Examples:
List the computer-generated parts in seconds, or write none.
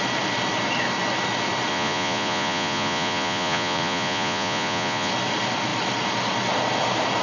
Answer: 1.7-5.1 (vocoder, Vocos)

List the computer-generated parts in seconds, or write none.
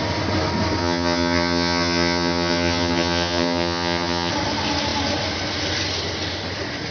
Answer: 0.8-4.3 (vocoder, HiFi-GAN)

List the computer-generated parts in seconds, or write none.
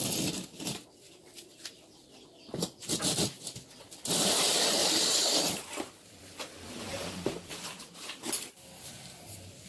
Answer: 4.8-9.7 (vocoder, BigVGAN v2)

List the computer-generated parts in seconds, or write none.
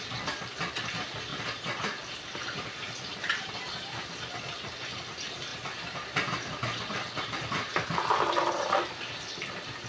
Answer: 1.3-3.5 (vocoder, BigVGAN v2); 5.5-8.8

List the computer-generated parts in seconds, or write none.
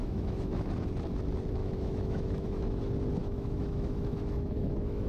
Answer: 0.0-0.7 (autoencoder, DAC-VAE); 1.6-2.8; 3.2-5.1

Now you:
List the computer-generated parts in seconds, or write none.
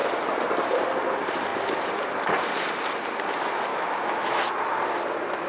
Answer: 3.7-4.5 (autoencoder, DAC-VAE)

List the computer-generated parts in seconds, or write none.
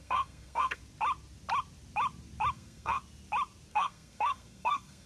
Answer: 0.0-0.8 (codec, SNAC); 2.5-3.0; 3.7-5.1